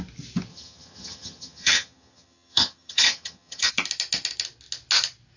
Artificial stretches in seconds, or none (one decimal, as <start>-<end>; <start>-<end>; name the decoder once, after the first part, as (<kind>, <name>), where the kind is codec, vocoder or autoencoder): 0.5-3.7 (vocoder, HiFi-GAN)